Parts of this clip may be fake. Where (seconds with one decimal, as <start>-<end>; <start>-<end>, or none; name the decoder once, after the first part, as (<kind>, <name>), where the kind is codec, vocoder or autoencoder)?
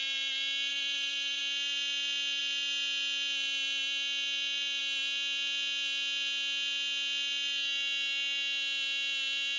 0.7-1.4 (vocoder, BigVGAN v2)